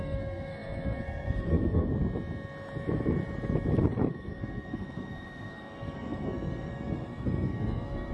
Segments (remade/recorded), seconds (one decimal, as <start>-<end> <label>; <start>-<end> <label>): 0.0-1.9 remade; 1.9-4.1 recorded; 4.1-8.1 remade